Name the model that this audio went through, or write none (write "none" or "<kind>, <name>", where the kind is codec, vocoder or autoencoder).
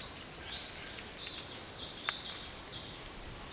none